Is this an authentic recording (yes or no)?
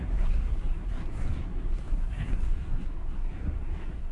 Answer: no